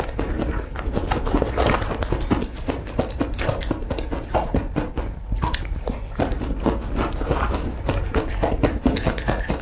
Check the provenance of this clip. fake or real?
real